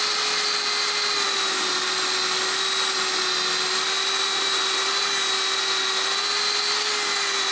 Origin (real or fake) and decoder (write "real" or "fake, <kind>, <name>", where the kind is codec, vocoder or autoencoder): real